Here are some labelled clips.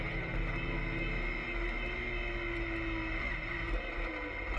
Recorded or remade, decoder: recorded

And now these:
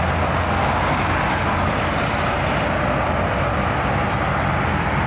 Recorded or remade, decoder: recorded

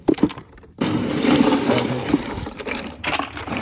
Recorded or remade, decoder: remade, vocoder, BigVGAN v2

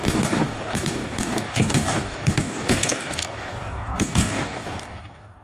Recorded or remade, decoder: remade, codec, DAC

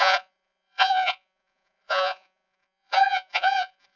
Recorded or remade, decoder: remade, vocoder, Vocos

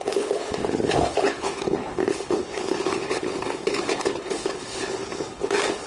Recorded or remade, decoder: remade, codec, HILCodec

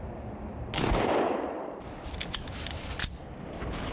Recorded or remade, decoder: recorded